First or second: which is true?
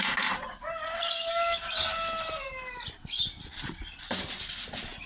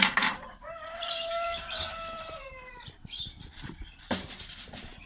first